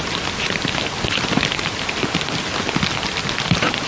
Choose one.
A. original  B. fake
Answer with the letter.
A